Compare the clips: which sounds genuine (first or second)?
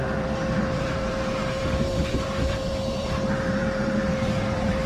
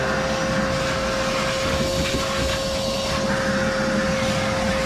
second